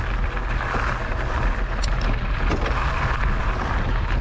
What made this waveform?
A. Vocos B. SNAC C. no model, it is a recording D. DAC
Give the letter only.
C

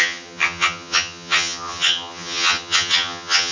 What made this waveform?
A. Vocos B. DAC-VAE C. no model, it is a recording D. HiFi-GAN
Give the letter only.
D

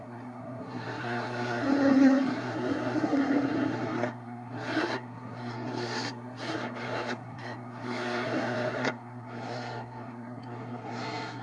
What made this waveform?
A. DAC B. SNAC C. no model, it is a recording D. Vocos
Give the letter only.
B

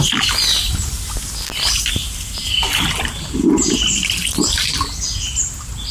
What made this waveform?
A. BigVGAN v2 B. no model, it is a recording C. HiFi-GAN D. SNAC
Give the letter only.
B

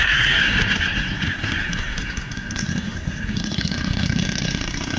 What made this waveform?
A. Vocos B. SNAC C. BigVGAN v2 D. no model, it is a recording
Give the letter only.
B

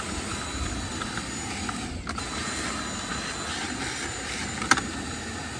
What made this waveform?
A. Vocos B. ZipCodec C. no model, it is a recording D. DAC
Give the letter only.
C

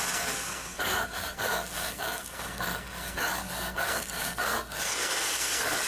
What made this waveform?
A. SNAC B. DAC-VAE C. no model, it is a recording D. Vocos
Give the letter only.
A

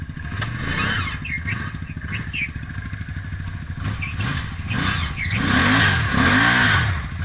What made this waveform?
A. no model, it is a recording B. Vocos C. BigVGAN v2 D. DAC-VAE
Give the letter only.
A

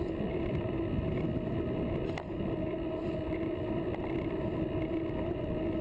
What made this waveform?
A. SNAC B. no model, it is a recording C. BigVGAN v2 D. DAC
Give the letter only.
B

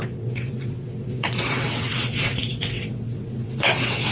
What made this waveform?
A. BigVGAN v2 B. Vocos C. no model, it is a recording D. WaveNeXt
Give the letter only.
D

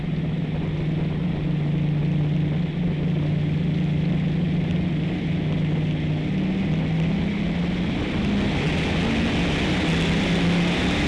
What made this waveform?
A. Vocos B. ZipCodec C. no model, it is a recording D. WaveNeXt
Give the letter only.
C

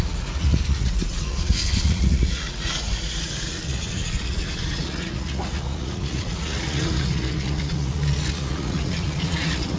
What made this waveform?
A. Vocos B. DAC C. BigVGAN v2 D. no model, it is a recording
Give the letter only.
A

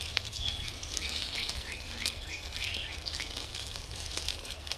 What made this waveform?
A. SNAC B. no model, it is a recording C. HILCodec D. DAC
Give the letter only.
A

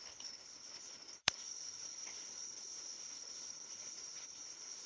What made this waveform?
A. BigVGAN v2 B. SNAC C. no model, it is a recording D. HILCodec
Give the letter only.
D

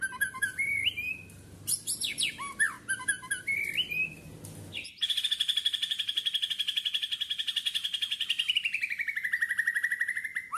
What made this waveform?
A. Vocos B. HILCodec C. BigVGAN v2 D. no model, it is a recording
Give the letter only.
D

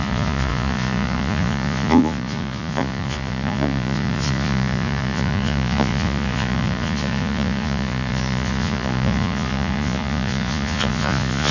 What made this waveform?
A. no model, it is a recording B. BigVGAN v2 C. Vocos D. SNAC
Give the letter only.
C